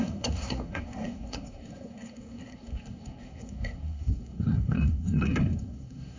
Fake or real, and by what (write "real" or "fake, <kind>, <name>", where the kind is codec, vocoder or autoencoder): fake, codec, SNAC